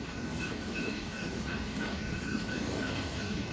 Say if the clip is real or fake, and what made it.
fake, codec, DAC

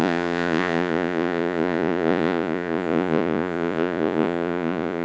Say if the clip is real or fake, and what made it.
fake, vocoder, Vocos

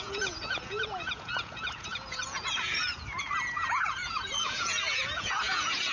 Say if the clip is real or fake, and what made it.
fake, vocoder, Vocos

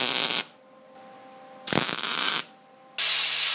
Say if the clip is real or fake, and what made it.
real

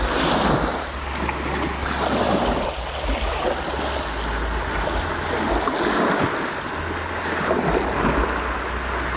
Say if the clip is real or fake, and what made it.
real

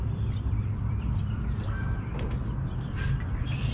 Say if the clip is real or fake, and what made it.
fake, vocoder, BigVGAN v2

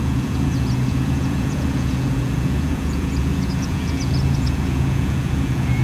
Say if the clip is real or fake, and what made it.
fake, vocoder, Vocos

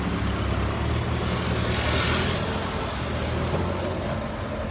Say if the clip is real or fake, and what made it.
real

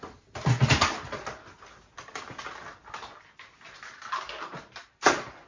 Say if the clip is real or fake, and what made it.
real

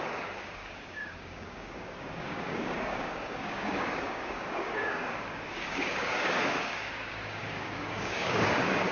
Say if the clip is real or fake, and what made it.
fake, codec, DAC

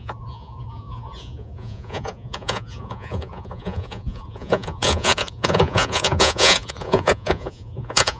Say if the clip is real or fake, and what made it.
fake, vocoder, Vocos